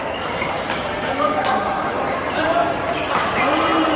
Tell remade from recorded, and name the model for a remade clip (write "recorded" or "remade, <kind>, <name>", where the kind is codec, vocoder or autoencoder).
recorded